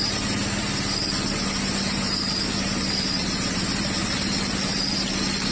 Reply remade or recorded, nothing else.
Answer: recorded